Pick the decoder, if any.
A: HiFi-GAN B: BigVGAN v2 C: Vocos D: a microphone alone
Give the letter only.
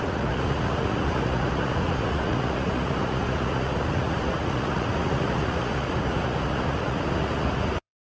C